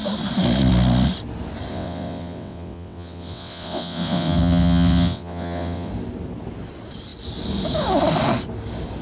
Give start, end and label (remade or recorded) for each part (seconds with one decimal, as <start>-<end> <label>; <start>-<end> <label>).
0.0-1.7 recorded; 1.7-5.9 remade; 5.9-9.0 recorded